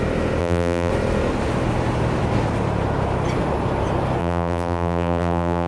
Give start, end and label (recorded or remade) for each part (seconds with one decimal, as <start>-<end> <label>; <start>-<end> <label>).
0.0-0.4 recorded; 0.4-0.9 remade; 0.9-4.2 recorded; 4.2-5.7 remade